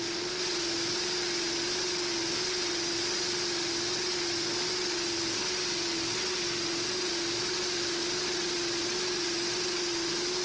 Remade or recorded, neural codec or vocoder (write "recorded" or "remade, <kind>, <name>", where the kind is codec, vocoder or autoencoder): recorded